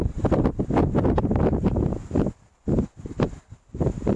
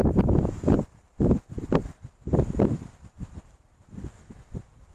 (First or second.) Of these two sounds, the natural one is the first